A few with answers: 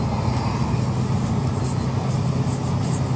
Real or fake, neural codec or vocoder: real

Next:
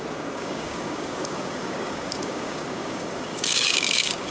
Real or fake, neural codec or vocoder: fake, codec, DAC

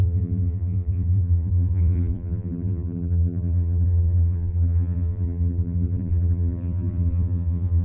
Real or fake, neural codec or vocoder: fake, vocoder, BigVGAN v2